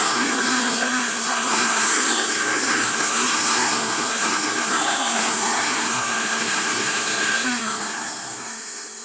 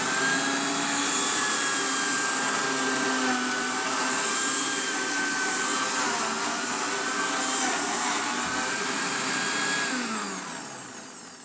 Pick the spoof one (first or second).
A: first